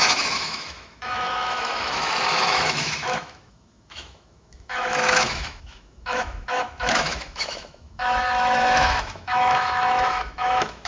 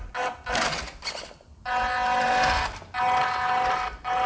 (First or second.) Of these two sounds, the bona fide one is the second